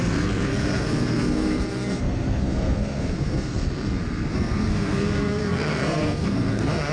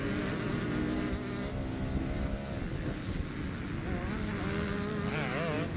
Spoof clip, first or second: first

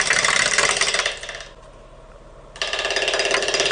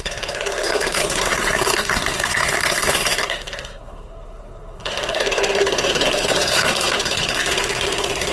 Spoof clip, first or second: second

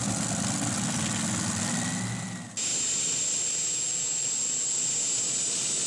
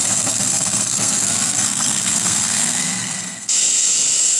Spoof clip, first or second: second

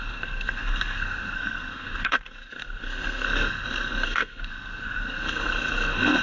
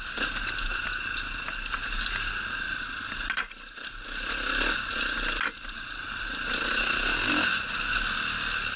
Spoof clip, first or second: first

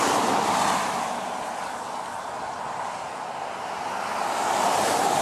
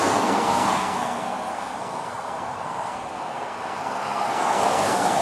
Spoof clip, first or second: second